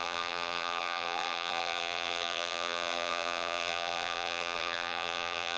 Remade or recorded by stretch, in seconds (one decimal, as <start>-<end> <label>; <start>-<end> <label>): 0.0-5.6 remade